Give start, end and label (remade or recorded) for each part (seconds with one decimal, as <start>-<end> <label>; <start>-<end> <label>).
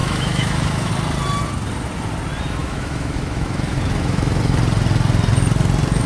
0.0-0.9 remade; 0.9-2.6 recorded; 2.6-4.4 remade; 4.4-6.1 recorded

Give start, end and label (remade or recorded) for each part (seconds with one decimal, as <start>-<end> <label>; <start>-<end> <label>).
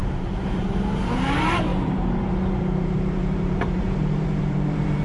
0.0-0.5 recorded; 0.5-5.0 remade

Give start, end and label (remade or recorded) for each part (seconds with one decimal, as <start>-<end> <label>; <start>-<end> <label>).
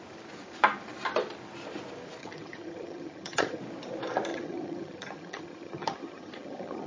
0.0-2.2 recorded; 2.2-3.6 remade; 3.6-4.3 recorded; 4.3-6.9 remade